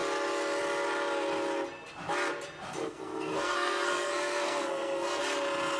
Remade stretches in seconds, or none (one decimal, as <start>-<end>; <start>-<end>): 2.8-5.2

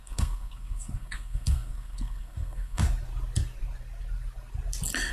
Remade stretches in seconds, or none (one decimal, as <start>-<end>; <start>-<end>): 0.0-2.8

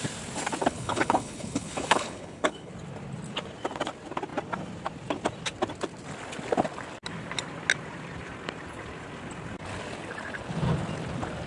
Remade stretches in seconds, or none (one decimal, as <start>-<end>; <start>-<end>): 0.6-2.7